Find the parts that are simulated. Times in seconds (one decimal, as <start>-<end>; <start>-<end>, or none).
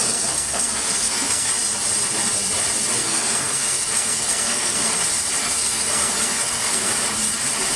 0.0-1.5; 3.0-5.0; 5.4-6.9